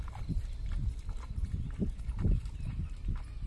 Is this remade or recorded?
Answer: recorded